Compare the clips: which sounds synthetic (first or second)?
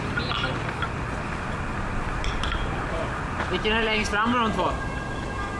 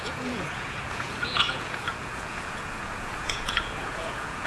second